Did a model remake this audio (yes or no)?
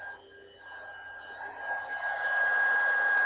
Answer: no